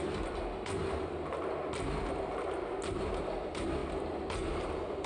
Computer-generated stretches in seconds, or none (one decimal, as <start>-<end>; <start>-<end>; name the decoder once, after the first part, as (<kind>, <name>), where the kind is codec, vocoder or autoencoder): none